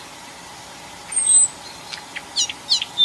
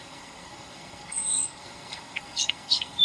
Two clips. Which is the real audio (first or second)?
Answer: first